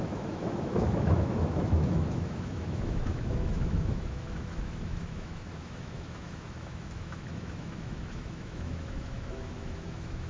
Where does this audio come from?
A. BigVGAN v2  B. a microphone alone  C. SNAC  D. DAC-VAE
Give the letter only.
D